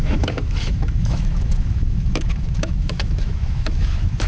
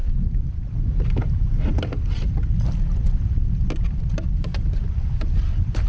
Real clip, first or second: second